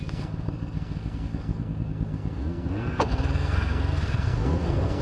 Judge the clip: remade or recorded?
remade